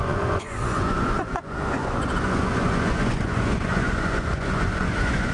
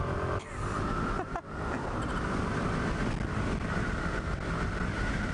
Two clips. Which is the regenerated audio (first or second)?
first